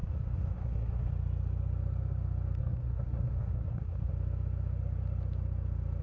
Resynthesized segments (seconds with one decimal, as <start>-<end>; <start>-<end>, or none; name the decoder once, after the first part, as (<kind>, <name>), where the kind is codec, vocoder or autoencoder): 0.0-1.1 (codec, SNAC); 2.6-4.1